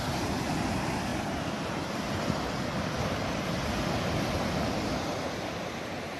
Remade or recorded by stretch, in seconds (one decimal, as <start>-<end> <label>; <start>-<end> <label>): 0.0-6.2 recorded